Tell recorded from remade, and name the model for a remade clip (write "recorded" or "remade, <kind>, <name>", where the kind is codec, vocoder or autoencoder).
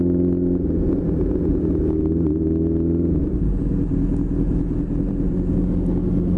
recorded